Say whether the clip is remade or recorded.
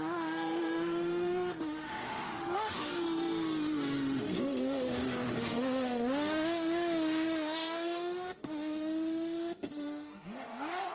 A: remade